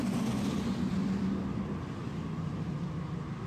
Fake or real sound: real